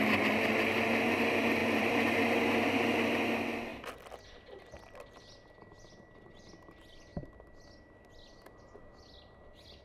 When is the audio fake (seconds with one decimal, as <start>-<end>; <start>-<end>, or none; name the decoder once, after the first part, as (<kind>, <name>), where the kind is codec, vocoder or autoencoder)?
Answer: 1.6-2.4 (vocoder, BigVGAN v2)